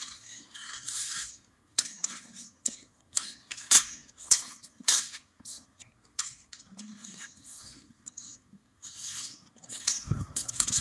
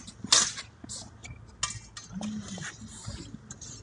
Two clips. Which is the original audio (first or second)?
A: second